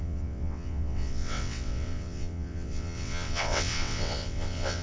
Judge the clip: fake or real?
fake